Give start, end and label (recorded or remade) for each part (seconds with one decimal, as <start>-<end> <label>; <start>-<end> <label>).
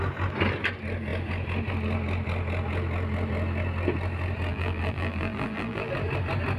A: 0.0-4.5 recorded; 4.5-5.9 remade; 5.9-6.6 recorded